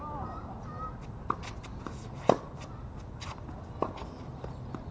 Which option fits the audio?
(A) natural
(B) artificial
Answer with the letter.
A